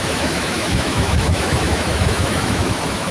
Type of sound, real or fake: fake